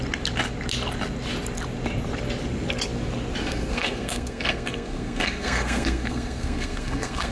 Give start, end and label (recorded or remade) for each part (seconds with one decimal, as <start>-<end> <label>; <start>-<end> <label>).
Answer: 0.0-3.4 recorded; 3.4-7.3 remade